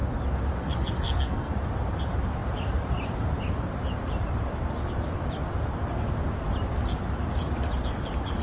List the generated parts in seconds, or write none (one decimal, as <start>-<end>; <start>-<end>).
0.6-1.5

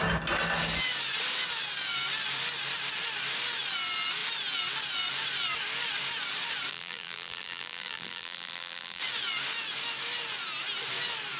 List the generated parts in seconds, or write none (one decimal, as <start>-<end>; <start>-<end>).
6.7-9.0

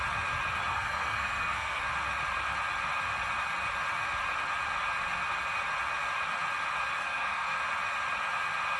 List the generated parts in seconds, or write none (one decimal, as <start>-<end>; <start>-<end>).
0.7-1.8; 7.0-7.6

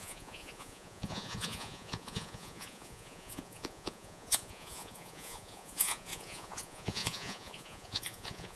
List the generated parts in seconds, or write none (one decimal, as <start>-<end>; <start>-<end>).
0.0-8.6